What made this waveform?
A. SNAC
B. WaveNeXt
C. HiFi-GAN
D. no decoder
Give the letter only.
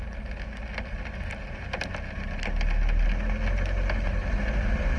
D